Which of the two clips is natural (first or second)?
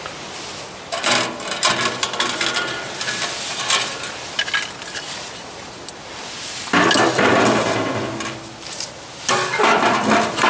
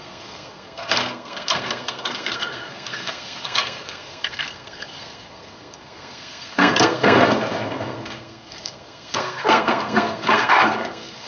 first